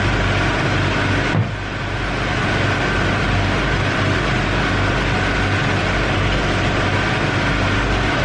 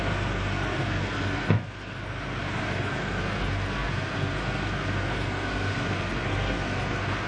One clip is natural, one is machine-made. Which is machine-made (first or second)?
second